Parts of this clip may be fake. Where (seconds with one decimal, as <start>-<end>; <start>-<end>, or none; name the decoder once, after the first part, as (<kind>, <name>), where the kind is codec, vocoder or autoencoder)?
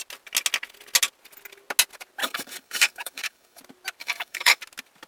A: 2.2-3.6 (codec, DAC); 4.0-4.6